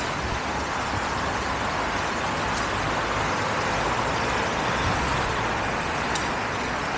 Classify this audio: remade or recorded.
recorded